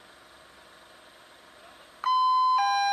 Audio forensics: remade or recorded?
recorded